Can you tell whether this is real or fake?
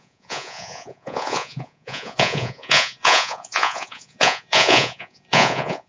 fake